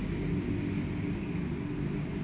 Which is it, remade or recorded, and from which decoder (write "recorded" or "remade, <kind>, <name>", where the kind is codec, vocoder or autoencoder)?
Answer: recorded